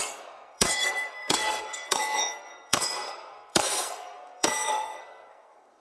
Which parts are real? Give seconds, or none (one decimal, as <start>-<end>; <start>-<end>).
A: none